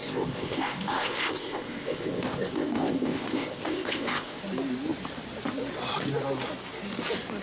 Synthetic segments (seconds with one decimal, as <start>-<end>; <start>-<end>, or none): 0.0-4.4